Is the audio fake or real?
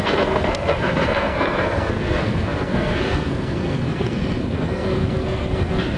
fake